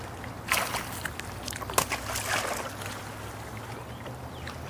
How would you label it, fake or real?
real